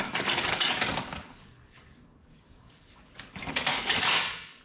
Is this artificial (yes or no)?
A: yes